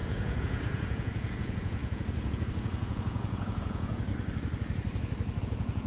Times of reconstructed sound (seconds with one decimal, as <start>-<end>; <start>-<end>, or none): 0.0-4.1; 5.4-5.9